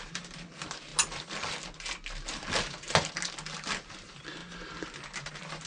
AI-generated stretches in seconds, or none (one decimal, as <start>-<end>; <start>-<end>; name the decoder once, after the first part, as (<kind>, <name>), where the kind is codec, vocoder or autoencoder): none